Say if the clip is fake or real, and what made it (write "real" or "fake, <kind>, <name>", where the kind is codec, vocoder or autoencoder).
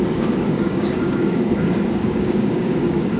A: fake, codec, DAC